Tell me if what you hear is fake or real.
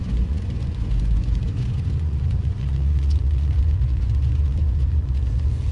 fake